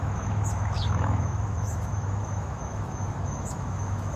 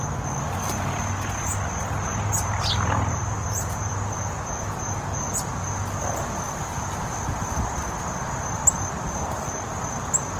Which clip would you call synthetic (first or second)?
first